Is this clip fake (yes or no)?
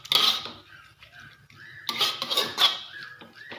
no